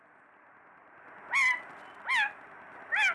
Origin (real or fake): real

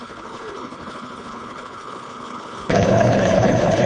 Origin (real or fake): fake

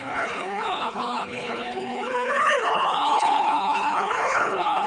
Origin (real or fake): fake